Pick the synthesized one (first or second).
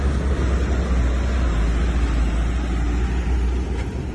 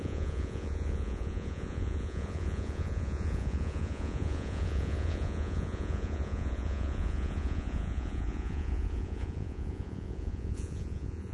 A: second